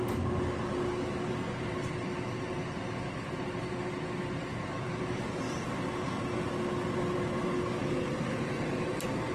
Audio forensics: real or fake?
real